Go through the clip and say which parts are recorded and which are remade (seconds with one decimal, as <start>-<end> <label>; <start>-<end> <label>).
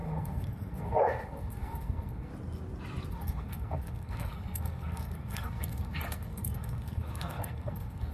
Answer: 0.0-2.3 remade; 2.3-3.1 recorded; 3.1-8.1 remade